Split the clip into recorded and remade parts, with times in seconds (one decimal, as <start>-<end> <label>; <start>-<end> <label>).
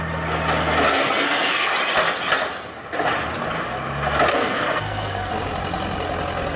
0.0-0.9 recorded; 0.9-1.7 remade; 1.7-4.3 recorded; 4.3-5.3 remade; 5.3-6.6 recorded